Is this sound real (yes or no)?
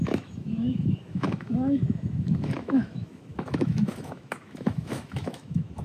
no